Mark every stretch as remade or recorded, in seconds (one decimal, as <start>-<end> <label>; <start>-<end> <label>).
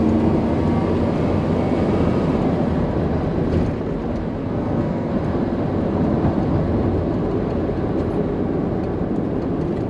0.0-4.4 recorded; 4.4-5.1 remade; 5.1-9.9 recorded